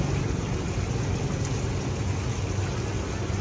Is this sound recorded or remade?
recorded